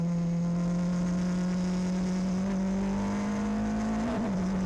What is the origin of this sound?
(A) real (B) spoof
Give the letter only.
A